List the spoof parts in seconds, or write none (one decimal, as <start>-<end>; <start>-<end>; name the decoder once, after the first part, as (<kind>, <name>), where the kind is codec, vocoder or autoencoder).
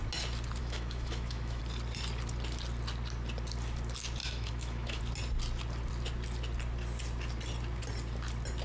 0.6-1.6 (autoencoder, DAC-VAE); 4.2-5.0